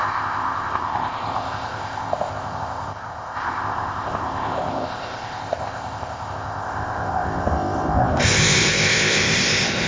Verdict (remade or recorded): remade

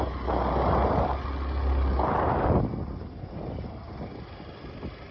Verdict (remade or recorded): recorded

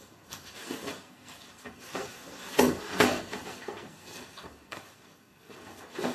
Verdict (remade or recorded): remade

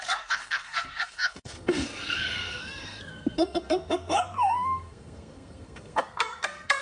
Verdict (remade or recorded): remade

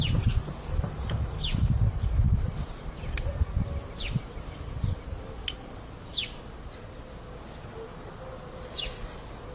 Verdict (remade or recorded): recorded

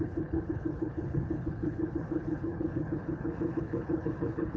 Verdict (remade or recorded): remade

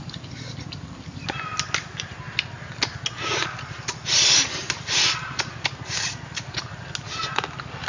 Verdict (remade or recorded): recorded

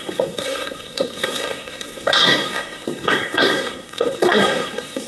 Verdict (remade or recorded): remade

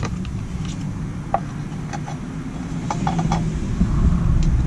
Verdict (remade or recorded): recorded